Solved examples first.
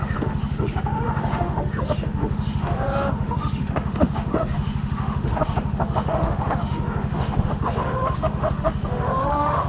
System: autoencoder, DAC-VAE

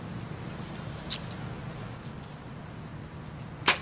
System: none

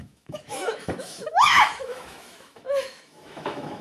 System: autoencoder, DAC-VAE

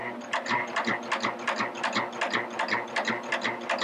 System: none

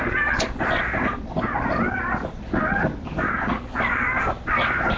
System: none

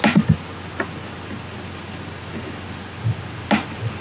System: none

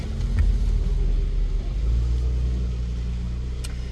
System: none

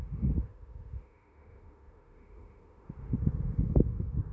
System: autoencoder, DAC-VAE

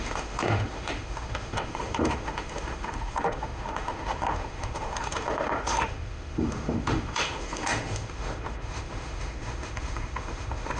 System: autoencoder, DAC-VAE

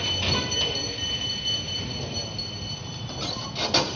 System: none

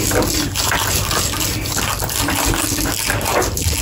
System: none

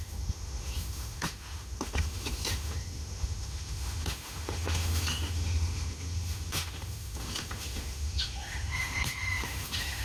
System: autoencoder, DAC-VAE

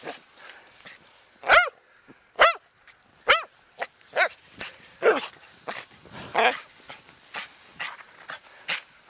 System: none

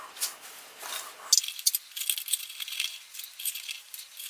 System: none